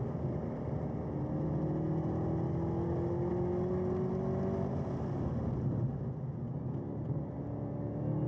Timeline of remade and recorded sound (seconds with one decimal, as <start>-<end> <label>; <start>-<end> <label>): 0.0-8.3 recorded